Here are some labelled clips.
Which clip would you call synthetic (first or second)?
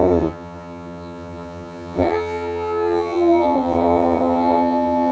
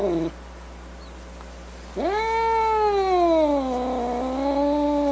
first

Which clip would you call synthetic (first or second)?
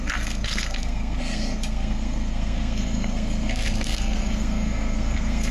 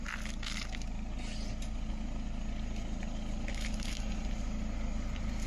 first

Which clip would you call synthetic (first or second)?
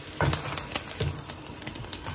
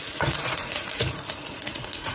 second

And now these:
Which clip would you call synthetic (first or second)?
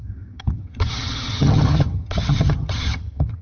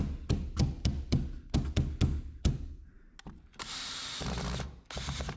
first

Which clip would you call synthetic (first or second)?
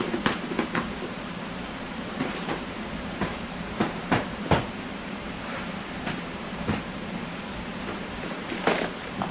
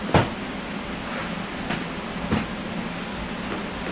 first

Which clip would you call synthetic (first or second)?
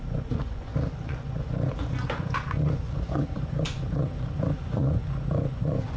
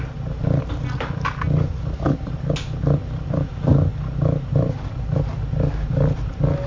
first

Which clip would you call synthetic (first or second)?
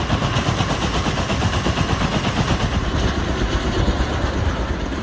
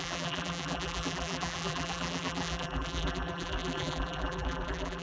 second